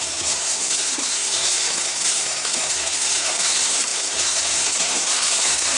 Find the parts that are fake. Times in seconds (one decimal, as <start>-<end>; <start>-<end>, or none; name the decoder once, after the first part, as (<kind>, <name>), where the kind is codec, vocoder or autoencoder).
0.0-5.8 (codec, SNAC)